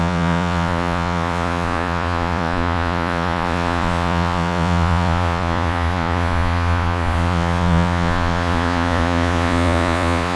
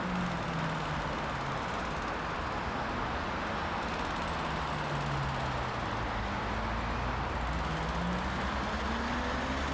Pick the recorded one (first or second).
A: second